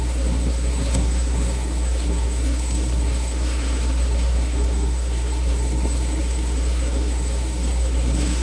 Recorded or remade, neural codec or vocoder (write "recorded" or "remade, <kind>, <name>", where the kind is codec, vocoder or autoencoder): remade, codec, SNAC